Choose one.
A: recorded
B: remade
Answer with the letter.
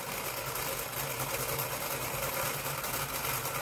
A